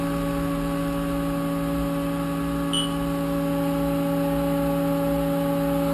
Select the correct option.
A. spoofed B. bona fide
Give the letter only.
B